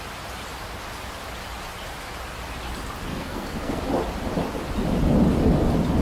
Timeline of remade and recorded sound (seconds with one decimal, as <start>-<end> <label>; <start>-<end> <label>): 0.0-3.1 recorded; 3.1-3.8 remade; 3.8-6.0 recorded